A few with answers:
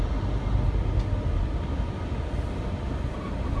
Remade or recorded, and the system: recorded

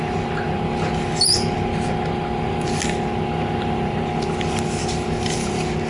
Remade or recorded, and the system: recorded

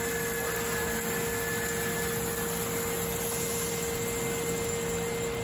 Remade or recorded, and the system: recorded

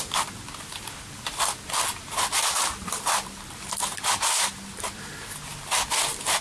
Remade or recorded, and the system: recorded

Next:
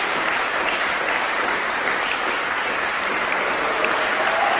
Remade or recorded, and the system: remade, vocoder, BigVGAN v2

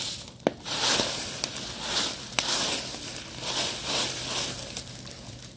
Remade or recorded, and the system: recorded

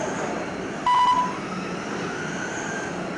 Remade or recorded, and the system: recorded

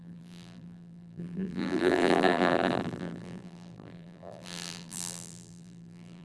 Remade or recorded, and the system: remade, vocoder, BigVGAN v2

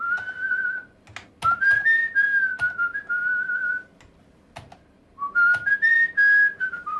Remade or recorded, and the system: recorded